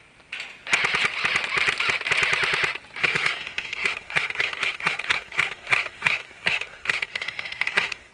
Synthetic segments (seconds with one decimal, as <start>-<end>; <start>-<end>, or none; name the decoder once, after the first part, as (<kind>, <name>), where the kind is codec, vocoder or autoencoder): 3.0-8.1 (codec, SNAC)